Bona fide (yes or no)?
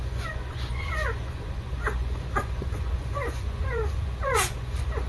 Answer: no